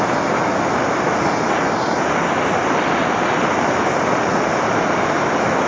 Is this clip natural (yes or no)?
yes